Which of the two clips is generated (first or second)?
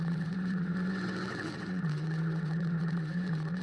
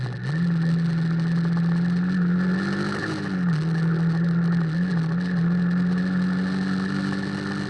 first